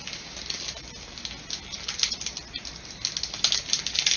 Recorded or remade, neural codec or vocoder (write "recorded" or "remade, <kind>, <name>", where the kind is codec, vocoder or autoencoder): recorded